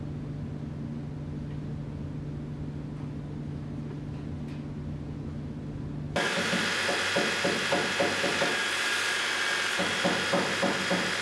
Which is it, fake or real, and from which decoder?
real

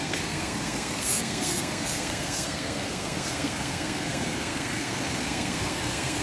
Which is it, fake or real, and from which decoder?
fake, codec, SNAC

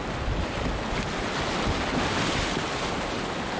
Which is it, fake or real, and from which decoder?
real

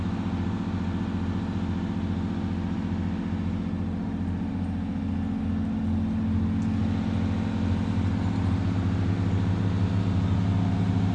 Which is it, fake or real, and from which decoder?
real